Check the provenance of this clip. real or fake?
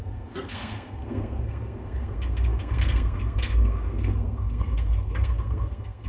fake